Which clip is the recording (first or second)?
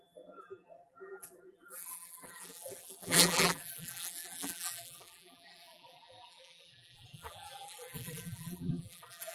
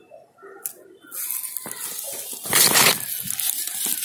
second